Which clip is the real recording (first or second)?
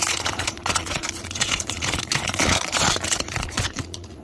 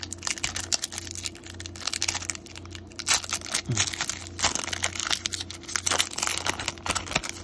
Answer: second